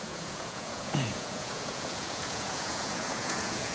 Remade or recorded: remade